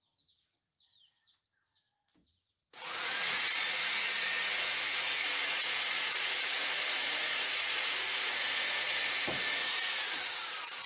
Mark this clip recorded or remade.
remade